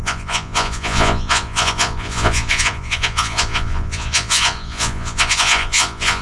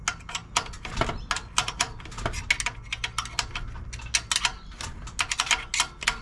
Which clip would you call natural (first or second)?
second